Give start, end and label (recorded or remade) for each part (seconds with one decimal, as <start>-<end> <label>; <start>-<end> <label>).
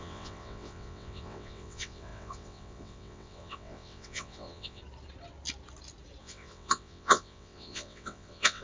0.0-4.8 remade; 4.8-6.2 recorded; 6.2-8.6 remade